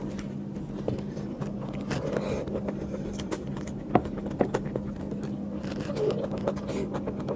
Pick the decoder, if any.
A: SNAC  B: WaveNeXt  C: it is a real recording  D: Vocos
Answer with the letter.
C